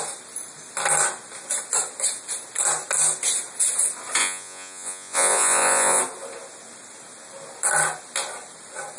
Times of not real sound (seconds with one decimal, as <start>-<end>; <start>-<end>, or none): 4.2-6.0